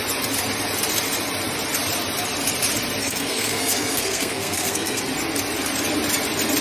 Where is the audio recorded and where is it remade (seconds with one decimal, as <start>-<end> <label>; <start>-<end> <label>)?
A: 0.0-3.0 recorded; 3.0-5.0 remade; 5.0-6.6 recorded